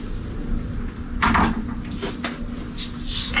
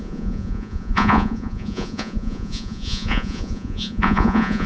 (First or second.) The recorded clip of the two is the first